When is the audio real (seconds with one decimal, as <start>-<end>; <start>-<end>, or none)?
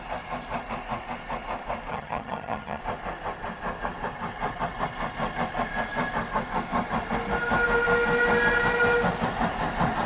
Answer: 0.0-1.9; 2.8-10.1